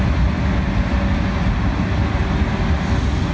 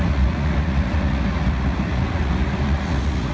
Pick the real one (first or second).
first